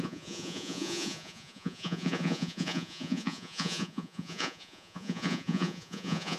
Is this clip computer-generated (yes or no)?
yes